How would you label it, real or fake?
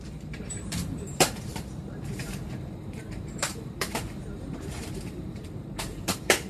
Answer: fake